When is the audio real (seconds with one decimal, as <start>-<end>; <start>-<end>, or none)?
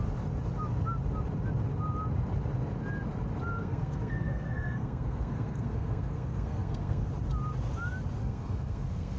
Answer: 0.0-3.6; 7.1-8.2